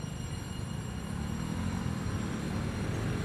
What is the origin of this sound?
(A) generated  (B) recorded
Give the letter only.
B